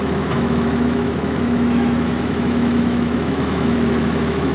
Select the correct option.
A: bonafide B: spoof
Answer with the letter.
B